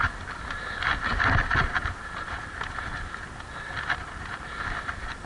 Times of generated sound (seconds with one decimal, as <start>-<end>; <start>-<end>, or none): none